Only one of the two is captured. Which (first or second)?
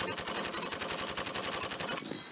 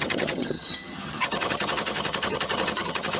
first